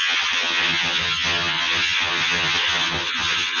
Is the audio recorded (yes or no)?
no